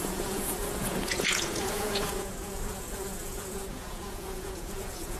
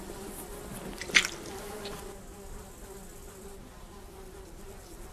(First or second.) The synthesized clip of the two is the first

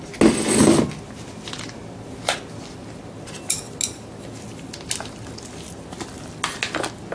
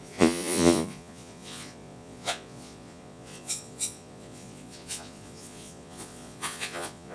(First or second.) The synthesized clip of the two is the second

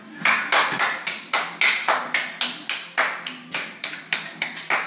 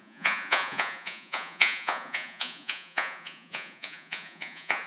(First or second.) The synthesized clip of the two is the second